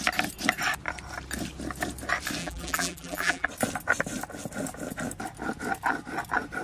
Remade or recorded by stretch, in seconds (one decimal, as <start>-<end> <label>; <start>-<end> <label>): 0.0-2.4 recorded; 2.4-3.5 remade; 3.5-6.6 recorded